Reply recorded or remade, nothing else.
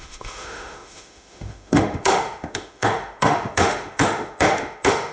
remade